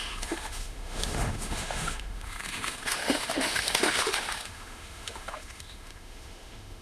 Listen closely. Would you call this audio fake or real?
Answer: fake